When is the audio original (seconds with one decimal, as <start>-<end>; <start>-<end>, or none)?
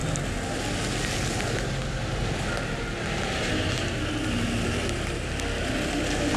0.0-6.4